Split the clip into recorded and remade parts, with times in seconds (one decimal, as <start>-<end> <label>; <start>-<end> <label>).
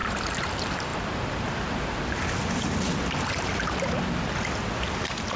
0.0-0.5 remade; 0.5-0.9 recorded; 0.9-4.0 remade; 4.0-5.4 recorded